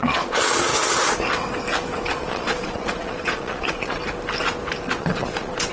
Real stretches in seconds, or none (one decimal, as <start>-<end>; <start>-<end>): 0.7-2.1; 4.0-5.0

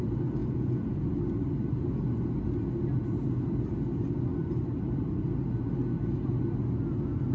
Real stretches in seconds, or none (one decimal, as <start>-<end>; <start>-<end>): 0.0-0.4; 1.0-7.3

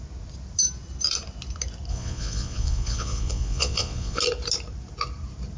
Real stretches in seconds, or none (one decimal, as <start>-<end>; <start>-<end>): 0.0-1.9; 4.2-5.6